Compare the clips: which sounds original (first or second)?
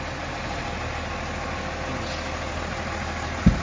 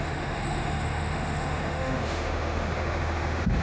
first